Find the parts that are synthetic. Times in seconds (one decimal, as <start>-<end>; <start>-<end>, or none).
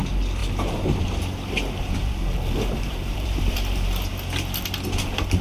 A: 0.4-1.0; 2.0-4.1